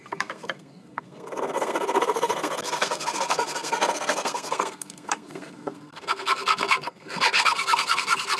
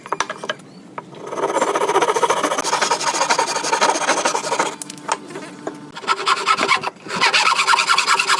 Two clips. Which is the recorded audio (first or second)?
second